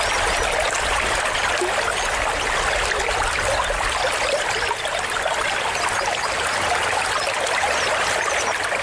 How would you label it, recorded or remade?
recorded